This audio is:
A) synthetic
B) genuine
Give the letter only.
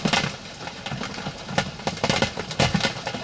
B